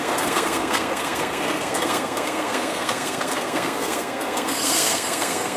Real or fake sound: fake